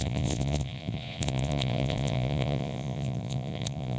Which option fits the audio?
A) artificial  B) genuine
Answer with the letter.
A